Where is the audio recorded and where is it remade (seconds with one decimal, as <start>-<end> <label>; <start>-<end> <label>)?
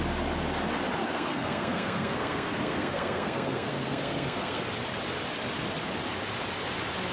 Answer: 0.0-1.0 recorded; 1.0-4.6 remade; 4.6-7.1 recorded